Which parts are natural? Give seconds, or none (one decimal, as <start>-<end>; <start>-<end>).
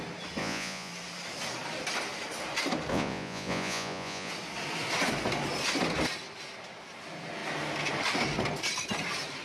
0.0-0.4; 0.9-2.9; 4.3-9.4